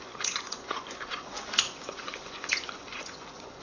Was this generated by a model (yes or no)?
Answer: yes